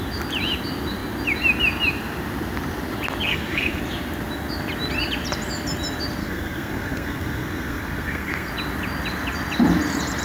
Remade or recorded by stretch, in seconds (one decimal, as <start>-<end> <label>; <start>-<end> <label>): 0.0-3.3 recorded; 3.3-3.8 remade; 3.8-6.2 recorded; 6.2-8.5 remade; 8.5-10.2 recorded